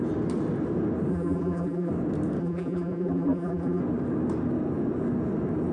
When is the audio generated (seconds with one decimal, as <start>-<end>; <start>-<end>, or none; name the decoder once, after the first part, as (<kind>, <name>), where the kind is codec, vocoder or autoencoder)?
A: 1.1-1.9 (vocoder, BigVGAN v2); 2.4-3.8